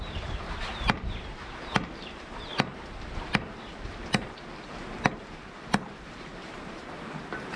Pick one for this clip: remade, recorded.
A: remade